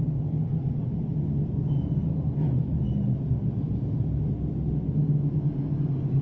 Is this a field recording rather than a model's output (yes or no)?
yes